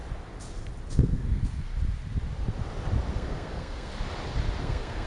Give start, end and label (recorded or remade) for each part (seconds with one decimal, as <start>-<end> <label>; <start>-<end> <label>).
0.0-0.9 recorded; 0.9-1.7 remade; 1.7-3.1 recorded; 3.1-3.9 remade; 3.9-4.6 recorded; 4.6-5.1 remade